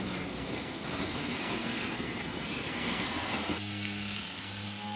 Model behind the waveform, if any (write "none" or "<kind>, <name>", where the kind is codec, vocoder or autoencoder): codec, SNAC